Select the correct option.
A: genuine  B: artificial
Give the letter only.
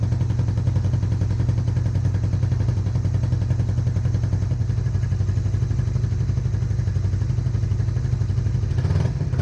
A